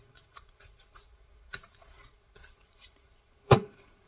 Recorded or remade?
remade